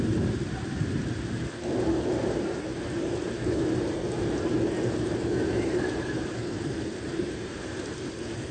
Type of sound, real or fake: fake